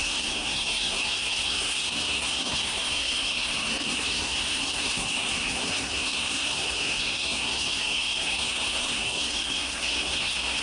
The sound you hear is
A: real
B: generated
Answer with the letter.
B